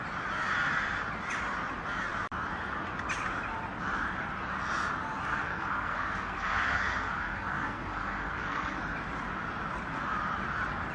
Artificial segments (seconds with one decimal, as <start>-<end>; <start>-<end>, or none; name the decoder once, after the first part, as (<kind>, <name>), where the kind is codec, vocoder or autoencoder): 5.3-8.8 (codec, SNAC)